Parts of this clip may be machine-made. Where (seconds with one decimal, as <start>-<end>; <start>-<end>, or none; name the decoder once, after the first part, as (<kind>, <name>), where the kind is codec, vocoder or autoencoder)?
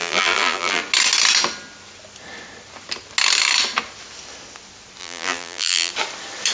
0.0-0.8 (vocoder, BigVGAN v2); 5.0-5.9